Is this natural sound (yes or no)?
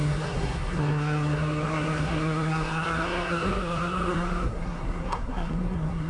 no